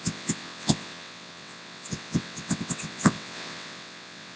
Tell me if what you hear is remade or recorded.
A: remade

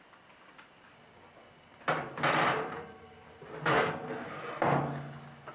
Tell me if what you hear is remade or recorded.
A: recorded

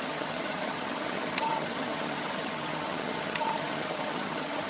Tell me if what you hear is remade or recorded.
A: remade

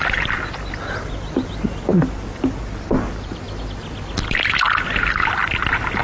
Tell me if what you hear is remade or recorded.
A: recorded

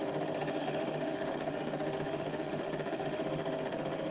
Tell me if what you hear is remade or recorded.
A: remade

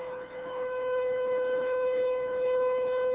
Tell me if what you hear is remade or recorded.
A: remade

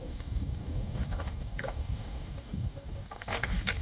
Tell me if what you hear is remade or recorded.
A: remade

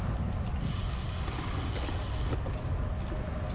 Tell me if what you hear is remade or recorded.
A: recorded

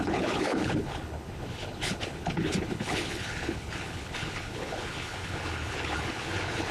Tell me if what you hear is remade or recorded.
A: remade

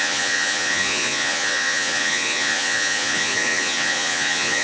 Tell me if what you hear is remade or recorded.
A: remade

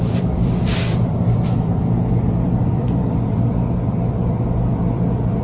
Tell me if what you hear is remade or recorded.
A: remade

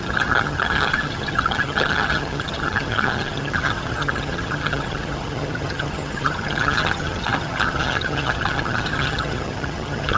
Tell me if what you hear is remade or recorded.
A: remade